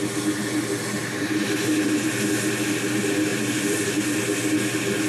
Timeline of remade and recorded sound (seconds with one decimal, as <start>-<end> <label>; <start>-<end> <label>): 0.0-1.0 recorded; 1.0-2.1 remade; 2.1-3.3 recorded; 3.3-4.2 remade; 4.2-5.1 recorded